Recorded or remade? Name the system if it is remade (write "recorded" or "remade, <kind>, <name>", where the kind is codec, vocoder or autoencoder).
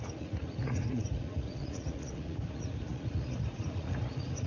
remade, vocoder, Vocos